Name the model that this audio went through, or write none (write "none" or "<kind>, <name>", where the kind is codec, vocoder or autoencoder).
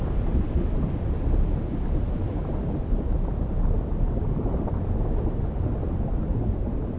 none